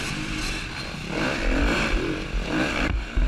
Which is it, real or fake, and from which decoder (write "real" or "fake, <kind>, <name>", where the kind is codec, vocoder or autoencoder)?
fake, vocoder, BigVGAN v2